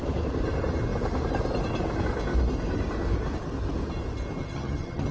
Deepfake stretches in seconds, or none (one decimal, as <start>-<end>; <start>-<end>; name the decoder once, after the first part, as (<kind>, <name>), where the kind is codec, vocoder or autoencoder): 4.4-5.1 (vocoder, HiFi-GAN)